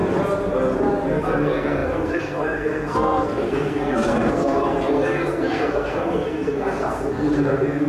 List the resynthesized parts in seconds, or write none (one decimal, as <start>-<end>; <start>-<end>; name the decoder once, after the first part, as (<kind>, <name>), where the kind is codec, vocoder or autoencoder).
1.1-7.9 (codec, SNAC)

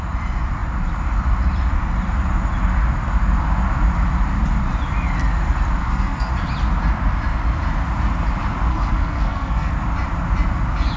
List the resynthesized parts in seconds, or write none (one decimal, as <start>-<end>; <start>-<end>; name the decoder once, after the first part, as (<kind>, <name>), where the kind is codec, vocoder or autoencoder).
5.8-6.3 (codec, SNAC); 8.7-9.7

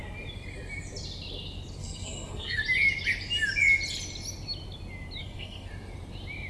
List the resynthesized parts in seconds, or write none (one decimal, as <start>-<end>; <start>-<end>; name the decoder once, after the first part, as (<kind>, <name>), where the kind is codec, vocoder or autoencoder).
1.8-2.6 (codec, SNAC); 5.2-5.7

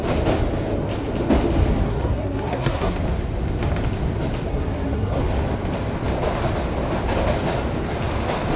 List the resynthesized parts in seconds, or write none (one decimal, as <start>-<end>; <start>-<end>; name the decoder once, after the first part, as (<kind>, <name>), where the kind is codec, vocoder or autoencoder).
1.8-3.0 (codec, SNAC); 4.5-5.2

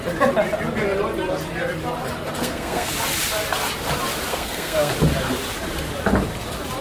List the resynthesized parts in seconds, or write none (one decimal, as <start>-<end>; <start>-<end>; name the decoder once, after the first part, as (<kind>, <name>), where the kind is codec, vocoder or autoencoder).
2.4-2.9 (codec, SNAC); 4.3-4.9

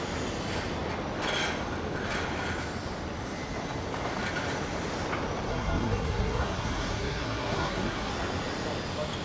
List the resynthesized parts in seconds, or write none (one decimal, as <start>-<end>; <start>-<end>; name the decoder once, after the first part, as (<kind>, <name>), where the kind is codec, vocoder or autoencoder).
5.5-8.1 (codec, SNAC)

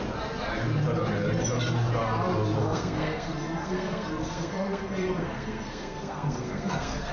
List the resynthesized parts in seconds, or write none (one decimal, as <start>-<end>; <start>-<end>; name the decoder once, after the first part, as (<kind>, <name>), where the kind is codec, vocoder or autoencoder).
2.6-7.1 (codec, SNAC)